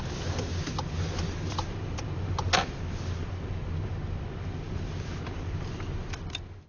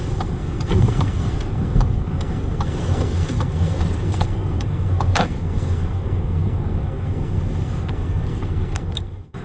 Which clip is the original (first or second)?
first